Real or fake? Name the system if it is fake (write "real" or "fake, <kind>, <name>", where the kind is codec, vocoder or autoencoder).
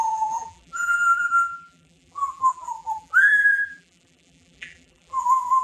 fake, vocoder, BigVGAN v2